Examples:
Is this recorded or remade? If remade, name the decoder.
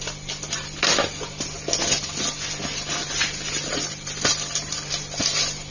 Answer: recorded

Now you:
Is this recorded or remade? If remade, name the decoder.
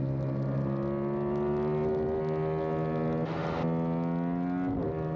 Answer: recorded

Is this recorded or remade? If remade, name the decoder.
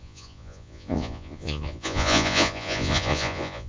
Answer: remade, vocoder, Vocos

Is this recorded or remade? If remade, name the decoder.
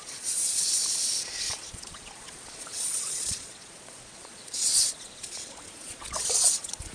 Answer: remade, vocoder, Vocos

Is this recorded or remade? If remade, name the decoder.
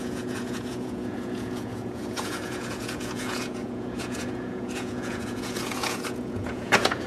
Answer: remade, vocoder, Vocos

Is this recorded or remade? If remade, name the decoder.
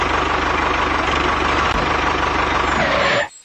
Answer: recorded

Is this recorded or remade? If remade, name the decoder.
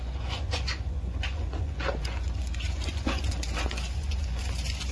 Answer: remade, vocoder, Vocos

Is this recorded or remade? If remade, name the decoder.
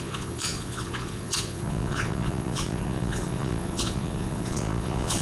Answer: remade, vocoder, Vocos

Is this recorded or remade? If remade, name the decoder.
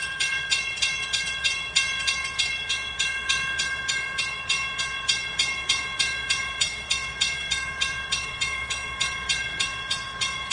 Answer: remade, vocoder, Vocos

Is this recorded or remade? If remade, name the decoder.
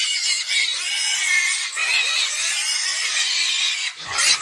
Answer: remade, vocoder, Vocos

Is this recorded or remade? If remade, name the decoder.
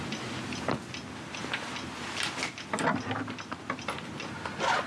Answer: recorded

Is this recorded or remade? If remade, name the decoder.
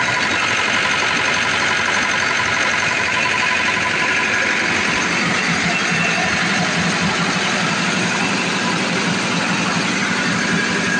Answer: recorded